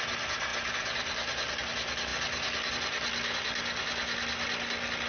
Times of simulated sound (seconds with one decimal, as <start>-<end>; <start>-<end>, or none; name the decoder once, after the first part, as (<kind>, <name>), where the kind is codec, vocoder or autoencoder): none